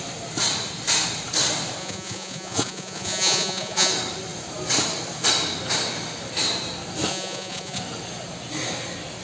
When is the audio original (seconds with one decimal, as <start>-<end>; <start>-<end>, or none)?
0.0-1.8; 3.9-7.1; 7.8-9.2